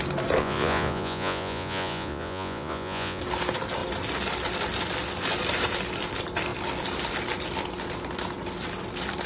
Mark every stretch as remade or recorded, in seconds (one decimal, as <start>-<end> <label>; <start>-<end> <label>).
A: 0.0-0.4 recorded; 0.4-3.2 remade; 3.2-9.3 recorded